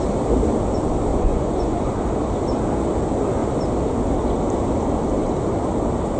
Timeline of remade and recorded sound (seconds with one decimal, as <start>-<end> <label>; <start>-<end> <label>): 0.0-1.1 recorded; 1.1-1.9 remade; 1.9-6.2 recorded